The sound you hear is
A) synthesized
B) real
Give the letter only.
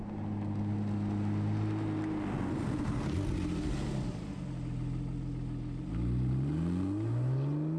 B